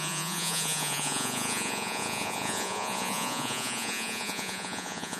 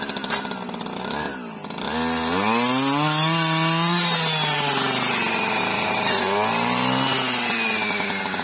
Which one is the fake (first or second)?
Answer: first